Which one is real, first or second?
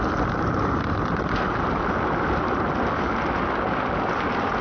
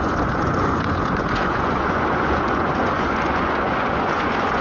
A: first